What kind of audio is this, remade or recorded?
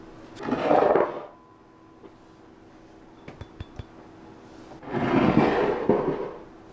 recorded